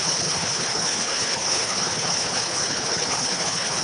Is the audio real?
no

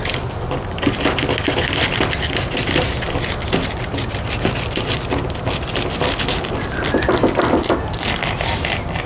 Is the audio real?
yes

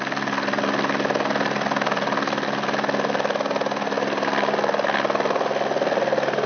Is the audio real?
yes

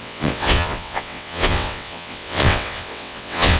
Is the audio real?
no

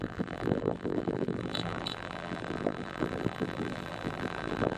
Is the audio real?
no